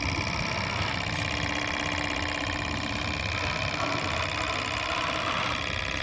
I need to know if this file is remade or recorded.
recorded